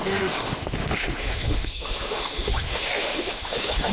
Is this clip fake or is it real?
fake